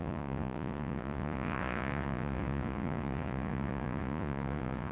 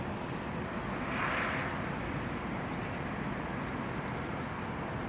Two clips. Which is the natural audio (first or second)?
second